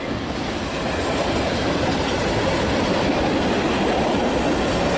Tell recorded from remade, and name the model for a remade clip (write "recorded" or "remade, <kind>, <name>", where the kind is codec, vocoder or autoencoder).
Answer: recorded